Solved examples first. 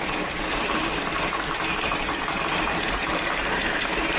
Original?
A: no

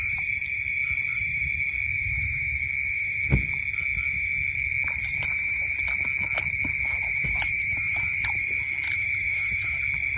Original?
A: yes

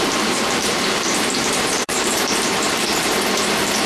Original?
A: no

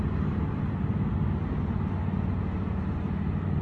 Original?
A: yes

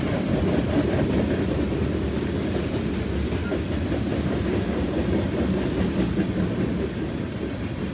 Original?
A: yes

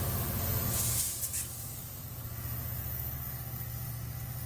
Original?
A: yes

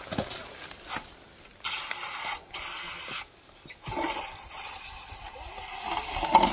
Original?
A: yes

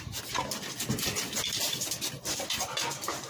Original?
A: no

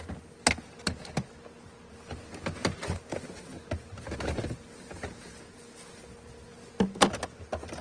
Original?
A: yes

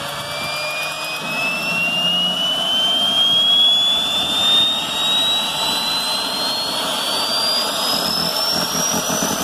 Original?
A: yes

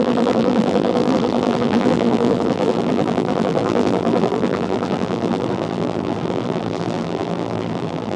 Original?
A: no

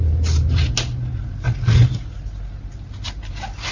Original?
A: yes